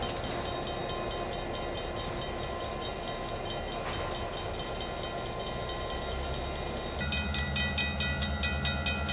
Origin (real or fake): real